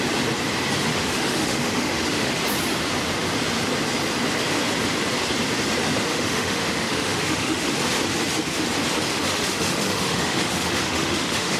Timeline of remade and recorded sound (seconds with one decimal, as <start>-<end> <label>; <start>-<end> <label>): 0.0-0.9 recorded; 0.9-2.3 remade; 2.3-6.1 recorded; 6.1-7.7 remade; 7.7-9.1 recorded; 9.1-11.6 remade